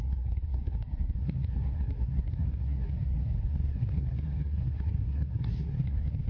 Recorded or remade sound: remade